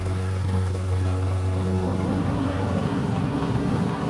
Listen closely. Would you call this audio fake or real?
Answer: fake